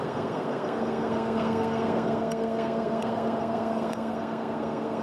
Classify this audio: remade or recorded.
remade